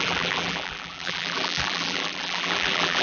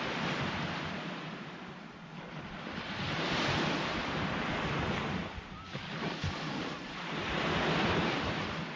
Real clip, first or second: second